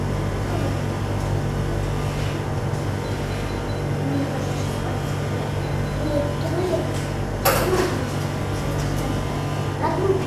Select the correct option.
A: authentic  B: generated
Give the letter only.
A